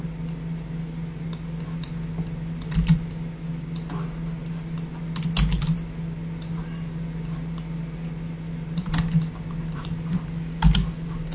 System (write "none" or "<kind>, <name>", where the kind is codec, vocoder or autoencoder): none